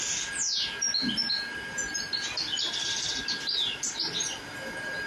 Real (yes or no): yes